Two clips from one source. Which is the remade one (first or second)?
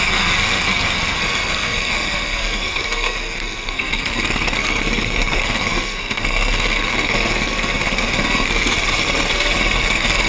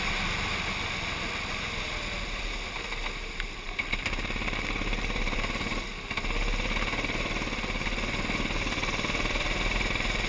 first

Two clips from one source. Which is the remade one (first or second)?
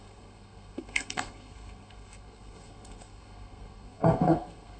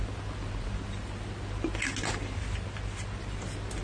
first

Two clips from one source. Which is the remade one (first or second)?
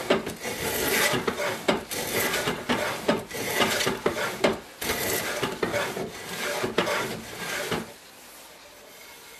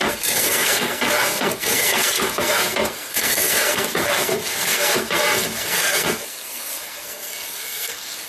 second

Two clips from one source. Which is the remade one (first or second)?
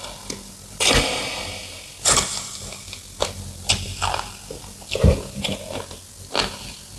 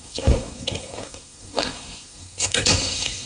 second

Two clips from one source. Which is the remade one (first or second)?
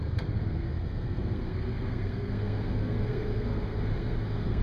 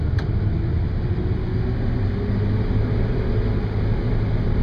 first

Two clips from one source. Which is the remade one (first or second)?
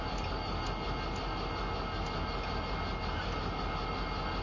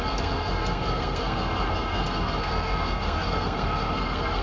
second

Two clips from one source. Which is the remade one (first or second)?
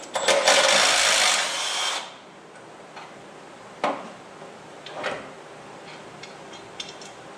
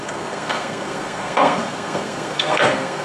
second